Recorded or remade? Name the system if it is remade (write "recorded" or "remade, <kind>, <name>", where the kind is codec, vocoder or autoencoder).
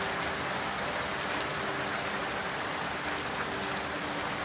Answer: recorded